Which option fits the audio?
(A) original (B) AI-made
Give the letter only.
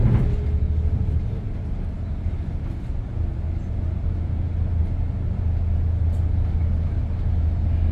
A